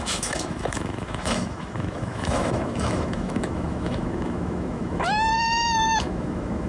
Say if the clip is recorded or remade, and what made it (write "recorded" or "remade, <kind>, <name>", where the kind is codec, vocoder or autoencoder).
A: remade, autoencoder, DAC-VAE